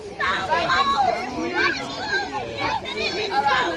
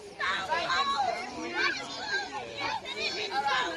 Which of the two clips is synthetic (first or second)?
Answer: first